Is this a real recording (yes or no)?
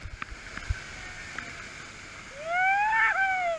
yes